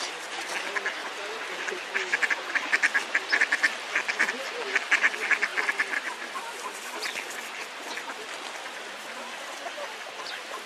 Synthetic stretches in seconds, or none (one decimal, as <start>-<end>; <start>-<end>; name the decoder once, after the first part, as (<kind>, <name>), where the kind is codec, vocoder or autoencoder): none